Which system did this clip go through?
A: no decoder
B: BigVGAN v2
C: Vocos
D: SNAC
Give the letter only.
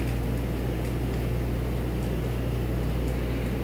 A